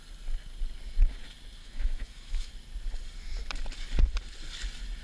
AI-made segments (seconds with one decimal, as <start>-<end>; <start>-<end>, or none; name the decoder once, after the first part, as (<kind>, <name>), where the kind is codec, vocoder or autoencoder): 1.6-2.5 (autoencoder, DAC-VAE)